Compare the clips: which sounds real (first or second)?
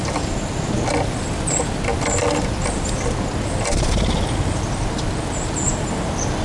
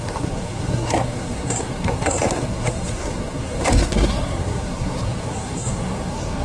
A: first